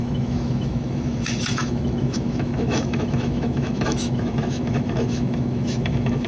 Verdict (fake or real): fake